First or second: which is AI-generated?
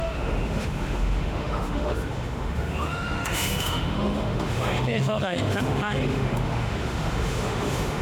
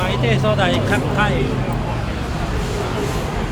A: first